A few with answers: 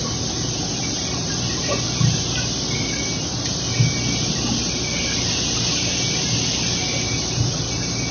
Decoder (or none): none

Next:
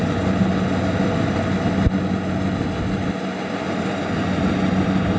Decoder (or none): none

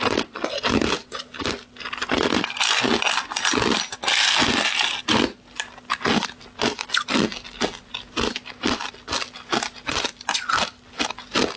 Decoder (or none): none